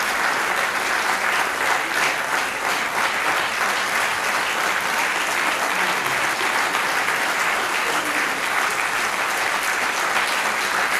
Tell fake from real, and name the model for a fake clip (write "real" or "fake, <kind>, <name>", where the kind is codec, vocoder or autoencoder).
real